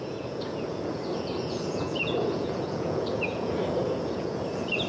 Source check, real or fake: fake